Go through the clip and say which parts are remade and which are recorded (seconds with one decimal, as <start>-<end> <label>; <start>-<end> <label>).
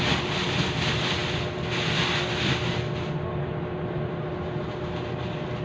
0.0-5.6 recorded